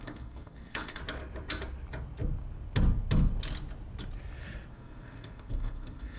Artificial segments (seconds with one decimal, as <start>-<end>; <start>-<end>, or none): 0.0-1.0; 4.7-6.2